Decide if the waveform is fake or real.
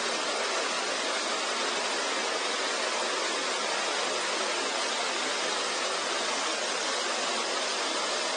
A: real